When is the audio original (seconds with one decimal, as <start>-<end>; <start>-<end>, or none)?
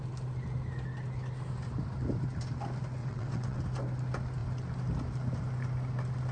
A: 0.0-3.0; 3.6-6.3